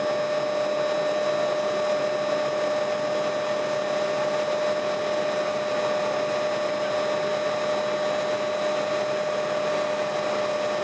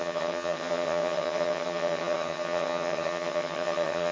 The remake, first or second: second